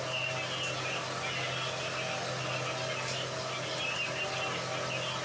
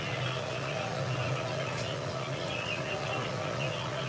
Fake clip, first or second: second